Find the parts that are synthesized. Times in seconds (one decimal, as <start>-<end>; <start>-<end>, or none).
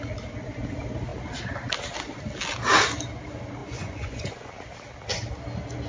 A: 3.6-4.5